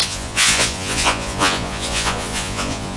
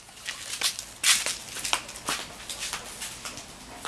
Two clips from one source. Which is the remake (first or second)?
first